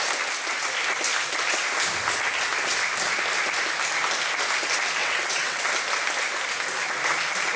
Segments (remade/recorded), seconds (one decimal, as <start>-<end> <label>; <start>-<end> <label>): 0.0-5.0 recorded; 5.0-5.6 remade; 5.6-7.6 recorded